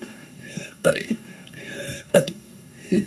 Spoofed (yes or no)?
yes